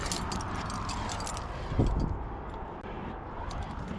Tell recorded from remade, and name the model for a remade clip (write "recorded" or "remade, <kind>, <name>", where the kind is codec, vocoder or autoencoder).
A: recorded